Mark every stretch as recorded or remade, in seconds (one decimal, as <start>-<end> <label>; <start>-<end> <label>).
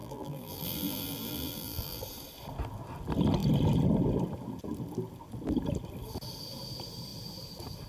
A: 0.0-2.0 remade; 2.0-7.9 recorded